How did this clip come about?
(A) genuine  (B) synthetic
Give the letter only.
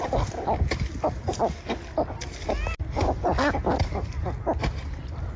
A